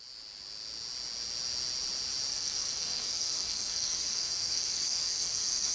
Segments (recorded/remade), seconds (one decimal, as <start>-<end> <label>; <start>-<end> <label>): 0.0-2.3 recorded; 2.3-5.7 remade